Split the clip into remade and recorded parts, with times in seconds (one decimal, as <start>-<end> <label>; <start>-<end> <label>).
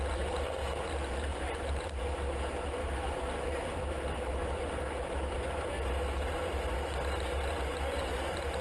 0.0-1.3 recorded; 1.3-2.0 remade; 2.0-2.8 recorded; 2.8-3.5 remade; 3.5-8.6 recorded